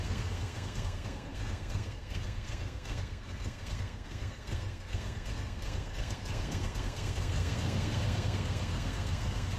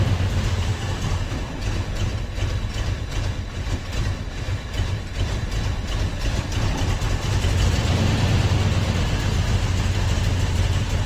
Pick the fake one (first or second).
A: first